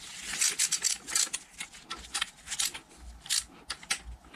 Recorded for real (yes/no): yes